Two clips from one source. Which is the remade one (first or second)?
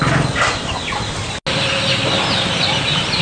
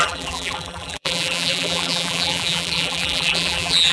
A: second